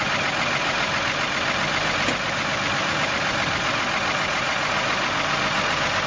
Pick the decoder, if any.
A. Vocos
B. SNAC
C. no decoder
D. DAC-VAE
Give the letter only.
C